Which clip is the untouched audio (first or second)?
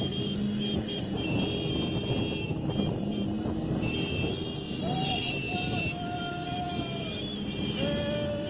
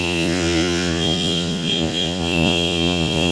first